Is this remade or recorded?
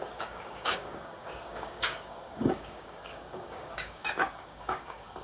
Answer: remade